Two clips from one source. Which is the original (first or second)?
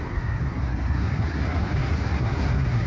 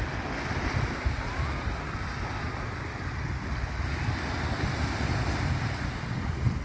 second